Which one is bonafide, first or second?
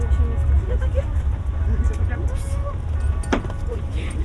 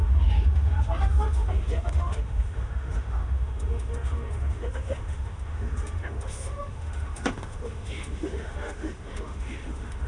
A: first